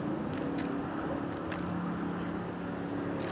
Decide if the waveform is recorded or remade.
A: recorded